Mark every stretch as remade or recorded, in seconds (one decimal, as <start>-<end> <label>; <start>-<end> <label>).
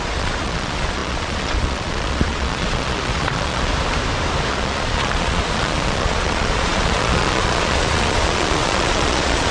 0.0-3.7 remade; 3.7-4.5 recorded; 4.5-9.5 remade